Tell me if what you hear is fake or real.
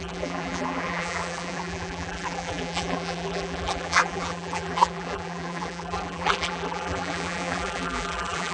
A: fake